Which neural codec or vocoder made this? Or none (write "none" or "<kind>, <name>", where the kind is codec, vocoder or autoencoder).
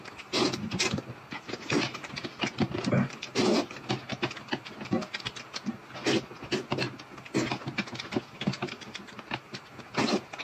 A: none